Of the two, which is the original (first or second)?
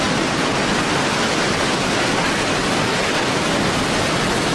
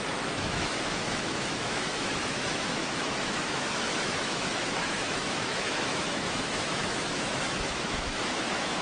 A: first